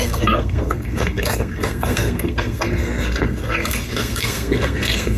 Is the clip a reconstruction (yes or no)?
yes